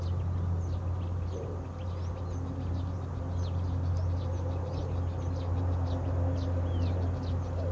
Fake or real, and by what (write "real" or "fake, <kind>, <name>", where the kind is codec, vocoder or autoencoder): real